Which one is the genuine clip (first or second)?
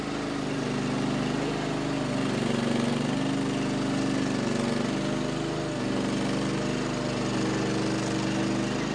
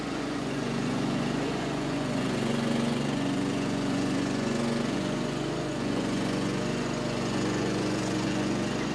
first